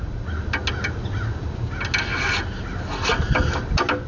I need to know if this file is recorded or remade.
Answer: recorded